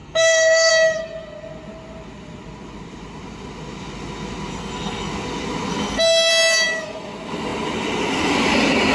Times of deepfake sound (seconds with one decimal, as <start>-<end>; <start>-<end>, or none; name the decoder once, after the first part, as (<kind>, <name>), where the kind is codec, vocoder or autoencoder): 0.0-0.7 (codec, SNAC); 4.5-5.1; 5.7-6.3